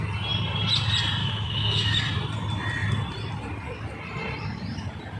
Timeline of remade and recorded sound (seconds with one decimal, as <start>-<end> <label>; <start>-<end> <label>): 0.0-1.2 recorded; 1.2-2.0 remade; 2.0-5.2 recorded